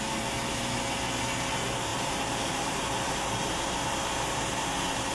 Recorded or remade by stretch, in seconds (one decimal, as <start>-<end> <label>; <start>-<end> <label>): 0.0-1.9 recorded; 1.9-5.1 remade